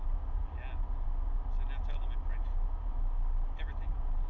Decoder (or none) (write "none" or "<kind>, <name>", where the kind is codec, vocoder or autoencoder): none